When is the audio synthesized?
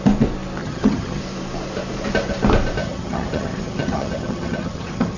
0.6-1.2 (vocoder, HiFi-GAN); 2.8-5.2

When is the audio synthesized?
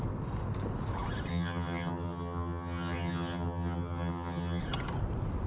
1.3-4.6 (vocoder, HiFi-GAN)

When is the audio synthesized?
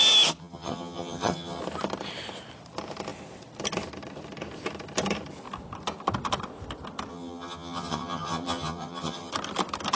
0.4-1.6 (vocoder, HiFi-GAN); 7.1-9.3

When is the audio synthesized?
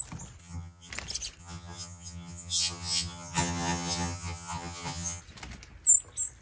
0.4-0.9 (vocoder, HiFi-GAN); 1.4-5.2